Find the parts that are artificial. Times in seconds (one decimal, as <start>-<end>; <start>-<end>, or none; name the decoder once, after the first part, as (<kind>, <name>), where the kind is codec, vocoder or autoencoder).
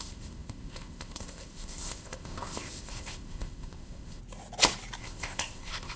0.0-4.2 (codec, ZipCodec); 5.0-6.0